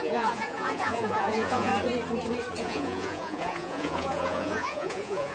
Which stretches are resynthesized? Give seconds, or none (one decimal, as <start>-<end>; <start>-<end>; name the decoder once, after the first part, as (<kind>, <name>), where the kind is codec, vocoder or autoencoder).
0.0-1.7 (vocoder, Vocos); 2.6-5.3